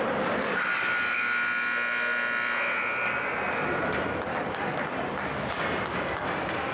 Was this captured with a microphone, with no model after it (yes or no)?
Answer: yes